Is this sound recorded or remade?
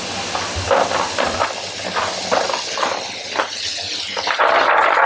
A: recorded